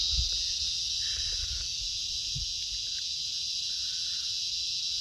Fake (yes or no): no